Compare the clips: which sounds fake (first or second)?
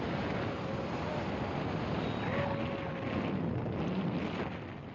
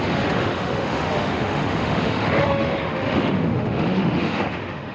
second